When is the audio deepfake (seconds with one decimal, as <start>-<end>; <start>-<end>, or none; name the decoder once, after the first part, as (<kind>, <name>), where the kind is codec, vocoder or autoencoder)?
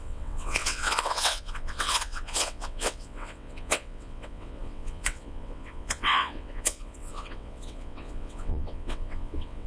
0.0-9.7 (vocoder, WaveNeXt)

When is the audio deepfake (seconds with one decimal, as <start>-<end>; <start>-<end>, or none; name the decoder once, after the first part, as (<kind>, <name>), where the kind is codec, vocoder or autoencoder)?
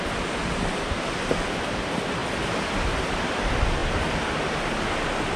none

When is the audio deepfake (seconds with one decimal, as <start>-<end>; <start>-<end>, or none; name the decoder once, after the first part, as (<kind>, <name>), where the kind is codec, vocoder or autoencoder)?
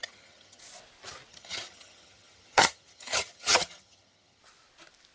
0.0-0.6 (vocoder, HiFi-GAN); 1.3-4.4